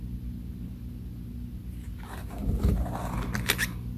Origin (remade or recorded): recorded